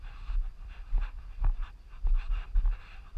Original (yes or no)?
yes